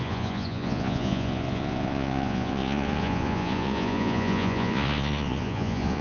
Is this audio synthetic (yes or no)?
yes